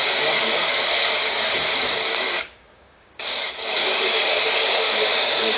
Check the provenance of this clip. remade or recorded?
remade